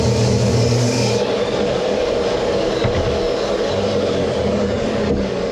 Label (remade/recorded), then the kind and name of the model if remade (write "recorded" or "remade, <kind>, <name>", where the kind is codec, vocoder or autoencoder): remade, codec, DAC